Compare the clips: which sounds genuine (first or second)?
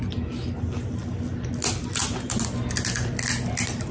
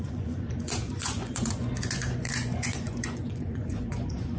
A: first